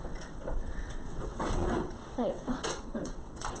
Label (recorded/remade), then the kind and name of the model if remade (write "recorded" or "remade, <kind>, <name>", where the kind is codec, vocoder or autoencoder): remade, vocoder, WaveNeXt